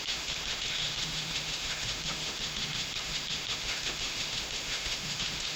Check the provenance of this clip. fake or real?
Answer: fake